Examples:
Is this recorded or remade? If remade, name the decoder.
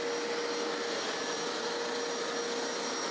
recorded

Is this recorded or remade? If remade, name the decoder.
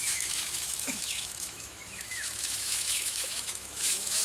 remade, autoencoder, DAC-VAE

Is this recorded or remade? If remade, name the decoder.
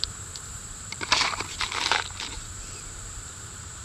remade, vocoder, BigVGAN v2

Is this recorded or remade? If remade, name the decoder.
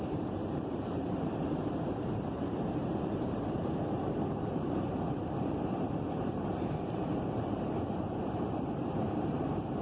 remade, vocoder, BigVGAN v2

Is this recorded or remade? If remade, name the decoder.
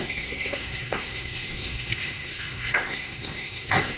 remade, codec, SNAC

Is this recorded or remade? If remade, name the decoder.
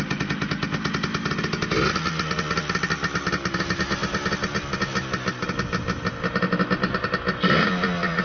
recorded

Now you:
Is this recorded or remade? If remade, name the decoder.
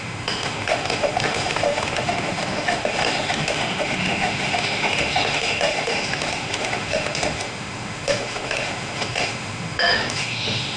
remade, autoencoder, DAC-VAE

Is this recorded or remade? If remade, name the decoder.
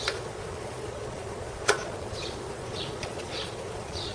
remade, vocoder, Vocos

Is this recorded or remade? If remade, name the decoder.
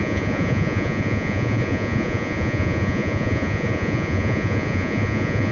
remade, vocoder, Vocos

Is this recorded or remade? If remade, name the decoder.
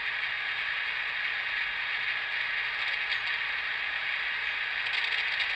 recorded